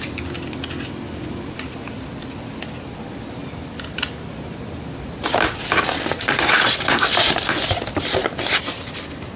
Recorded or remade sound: recorded